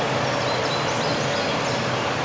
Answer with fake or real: real